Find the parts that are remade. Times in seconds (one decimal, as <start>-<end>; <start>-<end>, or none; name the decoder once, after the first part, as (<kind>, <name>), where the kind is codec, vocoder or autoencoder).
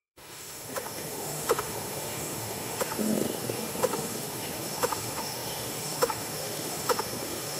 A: 0.0-7.6 (autoencoder, DAC-VAE)